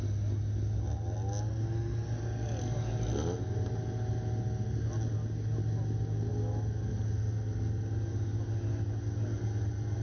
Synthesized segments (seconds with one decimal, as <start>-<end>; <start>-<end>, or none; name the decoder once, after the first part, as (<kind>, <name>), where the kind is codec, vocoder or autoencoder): none